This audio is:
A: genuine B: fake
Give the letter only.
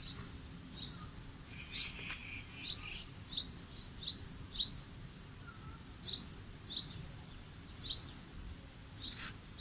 A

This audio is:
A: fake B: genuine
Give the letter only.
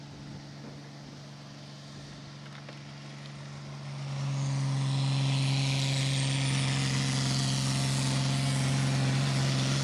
B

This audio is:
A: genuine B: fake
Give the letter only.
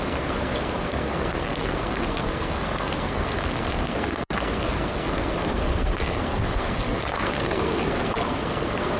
B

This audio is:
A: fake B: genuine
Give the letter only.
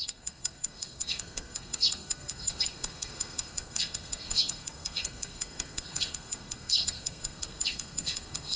A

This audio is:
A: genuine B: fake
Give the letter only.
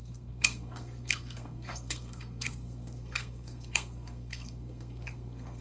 B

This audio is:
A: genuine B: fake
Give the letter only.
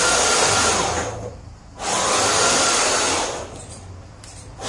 A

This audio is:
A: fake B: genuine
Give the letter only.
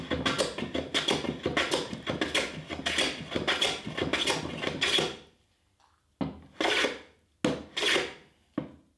B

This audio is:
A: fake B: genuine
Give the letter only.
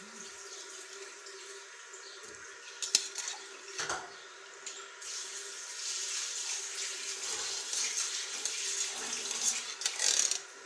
B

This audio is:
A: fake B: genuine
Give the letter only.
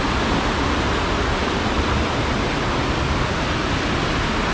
B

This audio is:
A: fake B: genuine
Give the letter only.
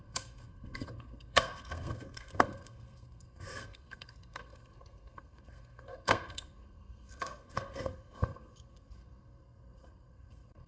A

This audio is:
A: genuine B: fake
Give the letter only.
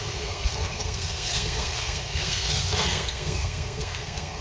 B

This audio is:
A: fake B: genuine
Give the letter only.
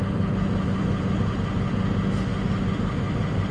B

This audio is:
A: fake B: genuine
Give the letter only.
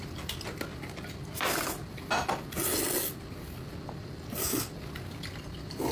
B